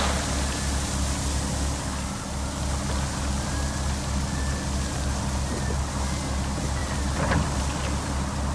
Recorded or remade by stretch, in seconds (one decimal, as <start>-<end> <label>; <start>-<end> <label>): 0.0-8.5 recorded